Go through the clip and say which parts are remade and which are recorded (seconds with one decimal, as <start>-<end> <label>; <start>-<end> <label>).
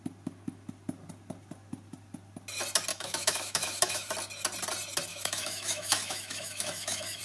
0.0-2.9 recorded; 2.9-4.1 remade; 4.1-5.1 recorded; 5.1-7.2 remade